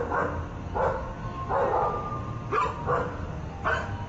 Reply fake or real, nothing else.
real